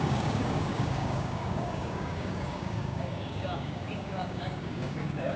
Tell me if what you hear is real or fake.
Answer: fake